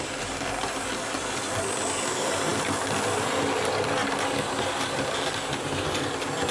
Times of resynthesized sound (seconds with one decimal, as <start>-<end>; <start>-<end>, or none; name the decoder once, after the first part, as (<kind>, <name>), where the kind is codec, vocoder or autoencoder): none